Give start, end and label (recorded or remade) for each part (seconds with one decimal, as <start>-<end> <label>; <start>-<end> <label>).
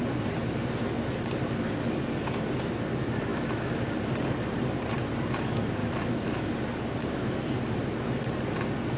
0.0-3.3 recorded; 3.3-3.9 remade; 3.9-5.8 recorded; 5.8-6.4 remade; 6.4-9.0 recorded